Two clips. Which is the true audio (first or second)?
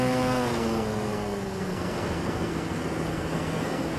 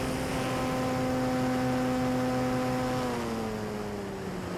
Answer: second